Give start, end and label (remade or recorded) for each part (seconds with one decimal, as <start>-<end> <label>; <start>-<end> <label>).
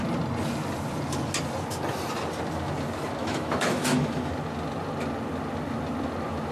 0.0-3.2 recorded; 3.2-4.3 remade; 4.3-6.5 recorded